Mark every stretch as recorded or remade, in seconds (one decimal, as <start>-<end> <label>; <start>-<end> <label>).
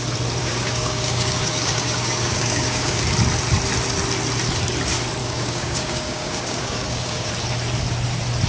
0.0-0.4 recorded; 0.4-3.0 remade; 3.0-5.2 recorded; 5.2-7.3 remade; 7.3-8.5 recorded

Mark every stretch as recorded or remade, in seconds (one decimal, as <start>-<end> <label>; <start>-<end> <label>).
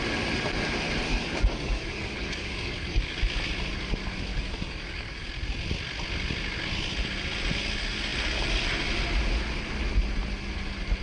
0.0-1.1 recorded; 1.1-3.2 remade; 3.2-4.3 recorded; 4.3-5.3 remade; 5.3-11.0 recorded